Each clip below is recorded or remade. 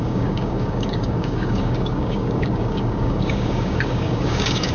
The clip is remade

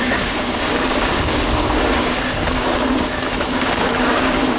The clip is remade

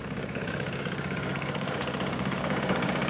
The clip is remade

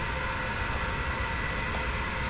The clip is recorded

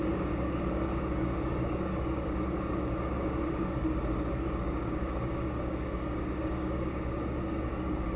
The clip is remade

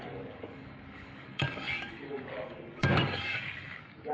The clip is remade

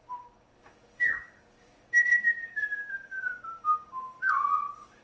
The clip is remade